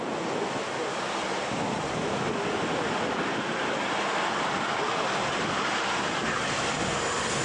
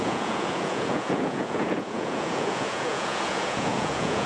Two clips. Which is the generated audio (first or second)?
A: second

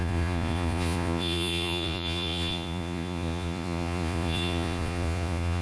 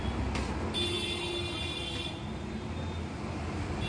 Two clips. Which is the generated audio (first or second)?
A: first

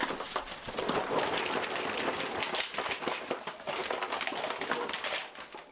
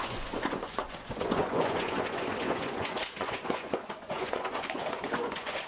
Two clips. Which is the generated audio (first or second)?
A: second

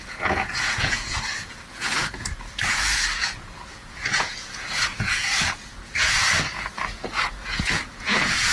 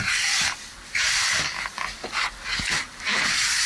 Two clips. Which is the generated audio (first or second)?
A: first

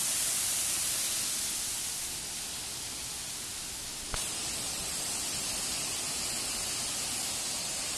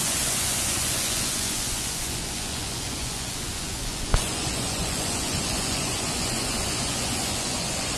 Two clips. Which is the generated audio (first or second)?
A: second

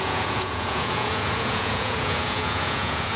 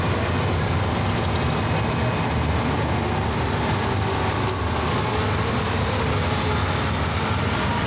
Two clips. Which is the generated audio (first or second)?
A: first